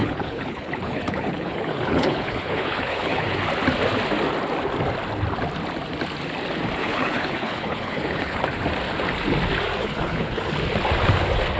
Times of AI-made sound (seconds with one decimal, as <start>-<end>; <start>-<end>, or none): 0.0-3.4; 6.8-8.4; 9.8-10.4